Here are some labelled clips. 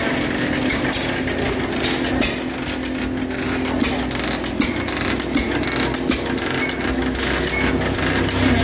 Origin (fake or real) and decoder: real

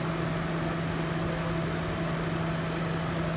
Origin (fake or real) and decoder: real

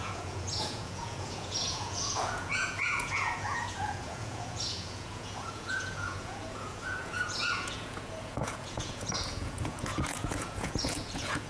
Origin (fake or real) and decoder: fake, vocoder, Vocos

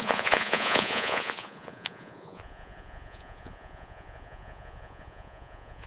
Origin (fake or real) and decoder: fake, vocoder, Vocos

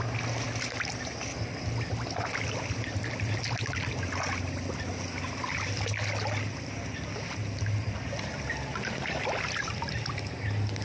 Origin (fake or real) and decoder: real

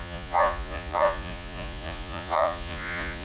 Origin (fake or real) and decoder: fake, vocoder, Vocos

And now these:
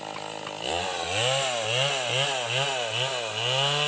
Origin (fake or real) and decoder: real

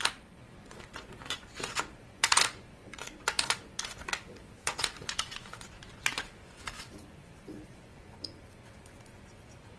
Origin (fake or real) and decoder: fake, vocoder, Vocos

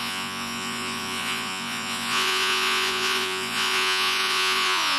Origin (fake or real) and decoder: fake, vocoder, Vocos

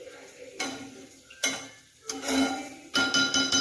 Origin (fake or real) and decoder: real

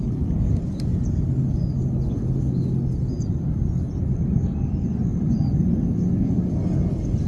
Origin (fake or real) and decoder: real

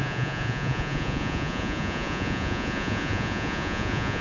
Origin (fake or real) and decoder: fake, vocoder, Vocos